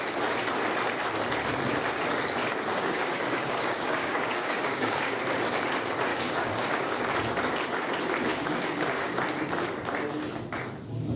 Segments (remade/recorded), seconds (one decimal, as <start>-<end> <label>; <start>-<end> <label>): 0.0-2.7 recorded; 2.7-5.2 remade; 5.2-6.1 recorded; 6.1-7.0 remade; 7.0-8.3 recorded; 8.3-9.2 remade; 9.2-11.2 recorded